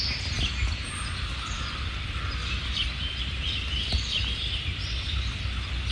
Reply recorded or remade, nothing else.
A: recorded